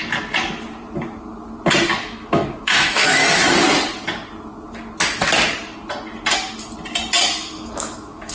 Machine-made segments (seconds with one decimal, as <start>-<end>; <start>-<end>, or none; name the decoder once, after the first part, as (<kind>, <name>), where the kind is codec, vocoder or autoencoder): 2.0-3.2 (autoencoder, DAC-VAE); 7.2-8.3